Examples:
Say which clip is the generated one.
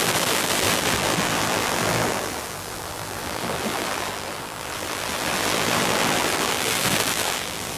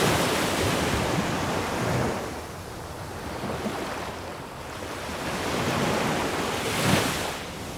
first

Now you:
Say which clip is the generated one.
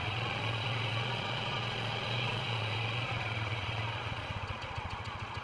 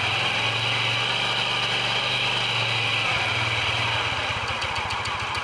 first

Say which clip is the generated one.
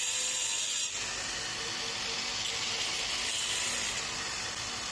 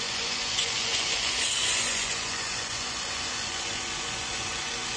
second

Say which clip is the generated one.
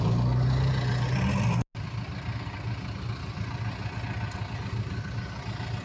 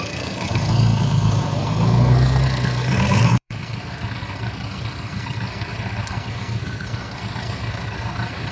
second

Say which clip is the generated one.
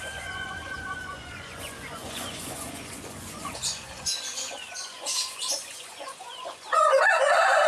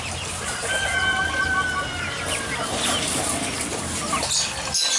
first